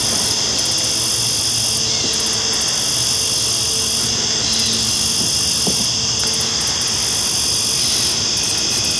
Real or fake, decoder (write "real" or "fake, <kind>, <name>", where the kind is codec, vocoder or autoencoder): real